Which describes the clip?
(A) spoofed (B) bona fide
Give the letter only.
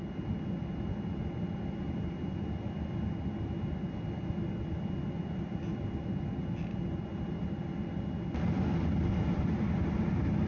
B